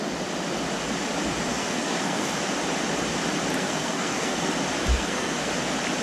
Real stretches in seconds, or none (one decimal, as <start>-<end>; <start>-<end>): 0.0-1.5; 2.3-3.5; 4.5-4.9; 5.5-6.0